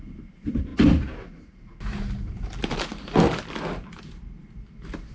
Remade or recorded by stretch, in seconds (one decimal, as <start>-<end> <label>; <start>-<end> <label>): 0.0-2.9 recorded; 2.9-4.5 remade; 4.5-5.1 recorded